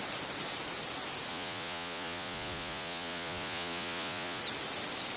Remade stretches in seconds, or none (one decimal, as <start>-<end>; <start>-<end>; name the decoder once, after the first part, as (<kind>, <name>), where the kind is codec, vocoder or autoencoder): 1.3-4.4 (vocoder, Vocos)